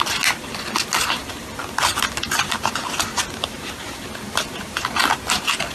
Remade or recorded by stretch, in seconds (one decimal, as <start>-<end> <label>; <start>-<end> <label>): 0.0-5.7 recorded

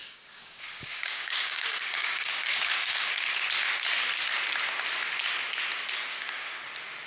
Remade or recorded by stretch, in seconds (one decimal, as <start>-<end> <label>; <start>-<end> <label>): 0.0-3.1 remade; 3.1-6.1 recorded; 6.1-6.6 remade; 6.6-7.1 recorded

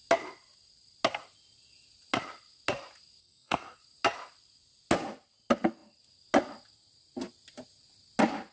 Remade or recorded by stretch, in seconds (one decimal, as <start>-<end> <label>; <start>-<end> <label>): 0.0-3.2 recorded; 3.2-3.8 remade; 3.8-8.5 recorded

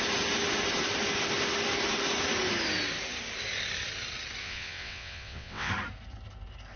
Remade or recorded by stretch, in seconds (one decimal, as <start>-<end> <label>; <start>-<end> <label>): 0.0-4.4 recorded; 4.4-5.7 remade; 5.7-6.8 recorded

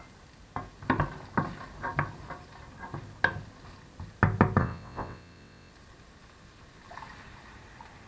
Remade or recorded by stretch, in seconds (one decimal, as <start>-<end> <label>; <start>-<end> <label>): 0.0-4.6 recorded; 4.6-5.7 remade; 5.7-8.1 recorded